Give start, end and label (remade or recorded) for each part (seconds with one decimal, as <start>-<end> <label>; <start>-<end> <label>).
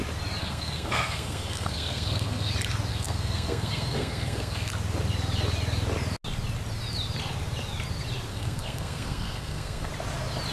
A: 0.0-0.4 recorded; 0.4-2.5 remade; 2.5-2.9 recorded; 2.9-4.7 remade; 4.7-8.3 recorded; 8.3-9.9 remade; 9.9-10.5 recorded